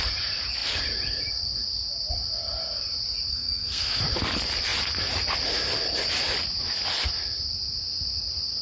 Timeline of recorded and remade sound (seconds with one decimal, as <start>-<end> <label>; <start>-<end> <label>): 0.0-3.3 recorded; 3.3-4.0 remade; 4.0-8.6 recorded